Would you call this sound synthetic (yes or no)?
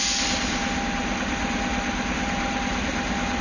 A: no